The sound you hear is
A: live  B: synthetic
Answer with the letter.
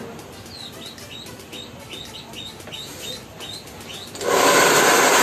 A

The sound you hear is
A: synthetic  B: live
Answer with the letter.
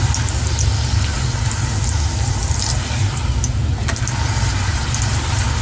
B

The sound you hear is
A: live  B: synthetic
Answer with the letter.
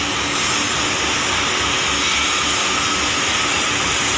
A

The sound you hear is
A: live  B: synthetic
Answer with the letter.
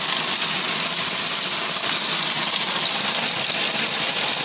A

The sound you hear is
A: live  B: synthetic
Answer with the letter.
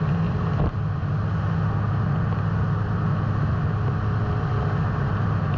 A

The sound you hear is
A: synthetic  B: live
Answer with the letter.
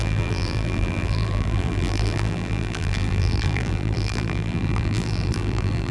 A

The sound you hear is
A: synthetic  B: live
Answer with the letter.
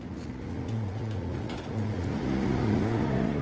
A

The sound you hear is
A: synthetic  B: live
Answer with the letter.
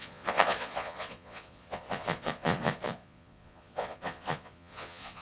A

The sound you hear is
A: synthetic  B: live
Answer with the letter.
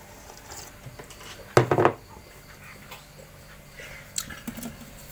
B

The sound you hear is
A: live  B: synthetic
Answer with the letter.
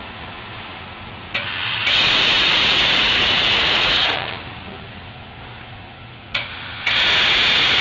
B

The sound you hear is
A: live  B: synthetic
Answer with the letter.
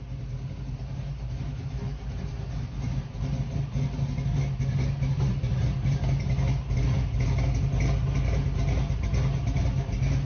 A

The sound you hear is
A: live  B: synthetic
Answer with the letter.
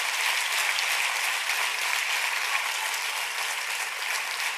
A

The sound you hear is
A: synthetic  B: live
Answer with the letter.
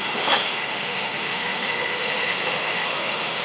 A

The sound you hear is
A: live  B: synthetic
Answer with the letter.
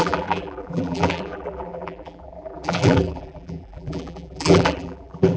B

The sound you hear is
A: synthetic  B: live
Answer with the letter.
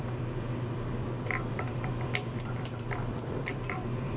A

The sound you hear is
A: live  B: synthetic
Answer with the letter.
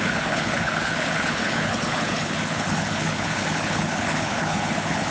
B